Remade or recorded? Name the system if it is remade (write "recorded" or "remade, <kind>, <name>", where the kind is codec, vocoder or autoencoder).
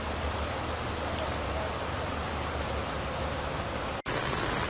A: recorded